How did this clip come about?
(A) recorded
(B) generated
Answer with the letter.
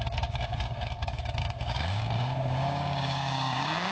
B